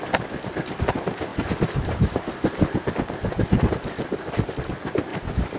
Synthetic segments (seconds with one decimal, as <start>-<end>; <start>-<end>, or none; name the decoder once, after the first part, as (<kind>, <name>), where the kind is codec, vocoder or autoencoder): 1.3-4.5 (vocoder, BigVGAN v2); 5.1-5.6

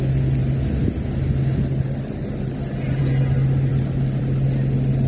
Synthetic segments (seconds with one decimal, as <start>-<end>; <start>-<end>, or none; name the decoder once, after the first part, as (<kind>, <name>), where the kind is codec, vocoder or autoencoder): none